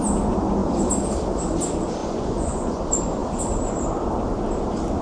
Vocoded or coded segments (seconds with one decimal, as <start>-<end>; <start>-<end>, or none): 2.0-2.8